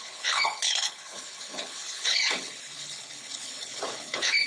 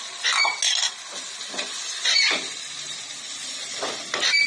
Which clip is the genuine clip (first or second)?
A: second